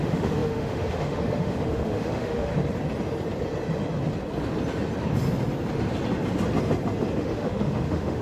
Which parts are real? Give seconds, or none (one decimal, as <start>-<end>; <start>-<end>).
2.5-7.2